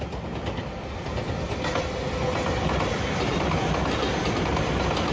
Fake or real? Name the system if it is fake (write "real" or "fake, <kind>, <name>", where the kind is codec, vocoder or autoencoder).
real